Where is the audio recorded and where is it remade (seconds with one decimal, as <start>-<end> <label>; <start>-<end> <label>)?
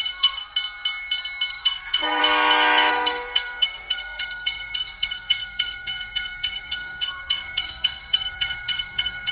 0.0-0.4 remade; 0.4-1.5 recorded; 1.5-2.2 remade; 2.2-2.9 recorded; 2.9-9.3 remade